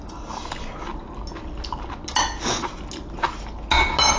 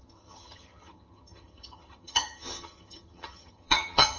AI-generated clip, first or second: second